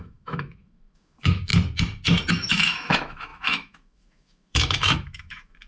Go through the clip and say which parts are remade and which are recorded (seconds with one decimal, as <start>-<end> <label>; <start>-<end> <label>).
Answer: 0.0-1.5 remade; 1.5-2.3 recorded; 2.3-5.7 remade